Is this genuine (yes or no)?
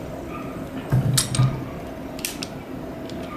yes